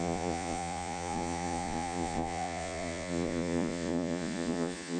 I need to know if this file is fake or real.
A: fake